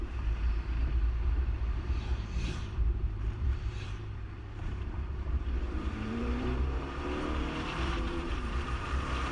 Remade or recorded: remade